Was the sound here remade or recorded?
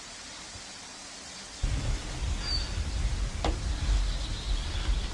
recorded